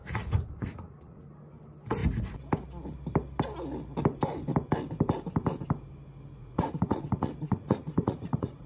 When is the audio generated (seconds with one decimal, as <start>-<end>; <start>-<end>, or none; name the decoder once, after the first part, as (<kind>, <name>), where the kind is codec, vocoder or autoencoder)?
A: 0.0-1.3 (vocoder, Vocos); 6.4-8.7

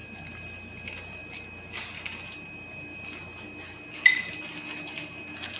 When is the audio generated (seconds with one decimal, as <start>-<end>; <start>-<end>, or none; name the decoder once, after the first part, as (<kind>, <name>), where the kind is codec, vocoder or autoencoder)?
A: none

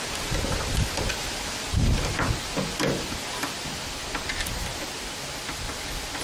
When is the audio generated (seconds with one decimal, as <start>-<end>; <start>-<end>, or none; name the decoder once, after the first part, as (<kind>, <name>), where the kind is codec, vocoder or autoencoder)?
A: none

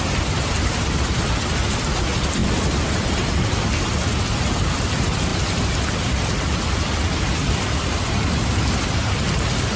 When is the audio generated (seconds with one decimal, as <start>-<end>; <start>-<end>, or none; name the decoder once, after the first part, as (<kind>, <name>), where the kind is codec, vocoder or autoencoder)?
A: none

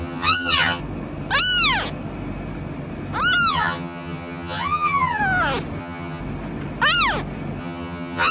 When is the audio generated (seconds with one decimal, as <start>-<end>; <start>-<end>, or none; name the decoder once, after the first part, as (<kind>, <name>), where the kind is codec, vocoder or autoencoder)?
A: 0.0-0.8 (vocoder, HiFi-GAN); 3.5-5.2; 5.8-6.2; 7.6-8.3

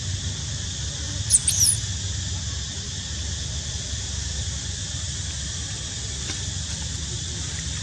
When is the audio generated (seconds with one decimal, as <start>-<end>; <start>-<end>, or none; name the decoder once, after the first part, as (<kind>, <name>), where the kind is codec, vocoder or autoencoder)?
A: 0.0-1.8 (vocoder, BigVGAN v2); 2.7-7.8